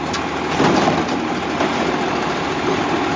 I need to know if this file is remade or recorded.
recorded